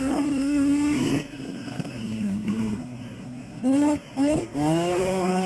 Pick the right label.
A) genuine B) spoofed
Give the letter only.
B